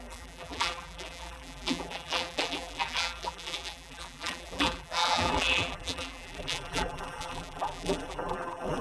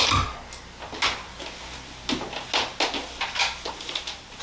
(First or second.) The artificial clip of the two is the first